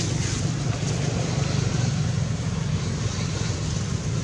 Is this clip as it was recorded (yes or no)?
yes